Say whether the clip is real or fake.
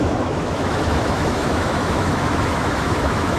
fake